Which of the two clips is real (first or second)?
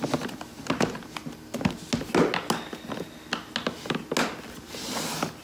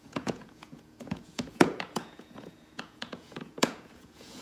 first